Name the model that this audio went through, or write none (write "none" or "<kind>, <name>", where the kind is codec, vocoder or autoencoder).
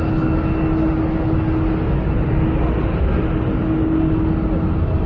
none